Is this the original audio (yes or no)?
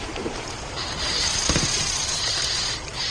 no